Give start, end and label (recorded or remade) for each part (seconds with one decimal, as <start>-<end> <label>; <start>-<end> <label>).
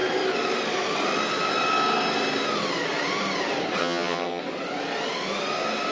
0.0-3.8 recorded; 3.8-4.4 remade; 4.4-5.9 recorded